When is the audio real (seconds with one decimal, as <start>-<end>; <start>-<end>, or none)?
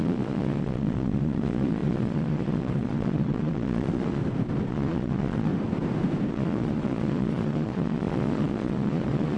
4.2-4.7; 5.5-6.3